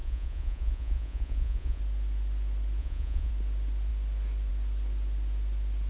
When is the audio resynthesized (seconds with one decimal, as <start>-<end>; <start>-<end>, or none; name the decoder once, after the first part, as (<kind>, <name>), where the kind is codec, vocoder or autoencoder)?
0.0-1.8 (vocoder, Vocos); 2.8-3.3